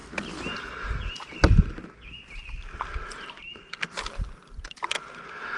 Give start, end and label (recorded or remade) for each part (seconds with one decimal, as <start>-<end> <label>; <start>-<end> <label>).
0.0-5.6 recorded